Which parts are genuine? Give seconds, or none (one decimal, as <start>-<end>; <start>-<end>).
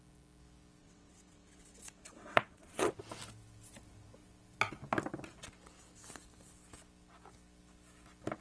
0.0-0.8; 3.0-8.4